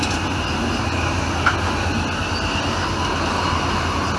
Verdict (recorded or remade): recorded